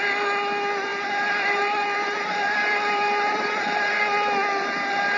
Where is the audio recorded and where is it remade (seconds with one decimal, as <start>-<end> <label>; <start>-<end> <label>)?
0.0-0.9 recorded; 0.9-4.0 remade; 4.0-5.2 recorded